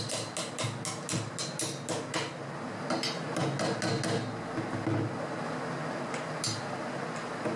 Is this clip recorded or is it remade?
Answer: recorded